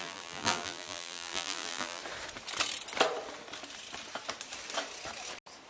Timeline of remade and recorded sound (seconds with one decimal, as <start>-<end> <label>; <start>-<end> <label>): 0.0-2.0 remade; 2.0-5.7 recorded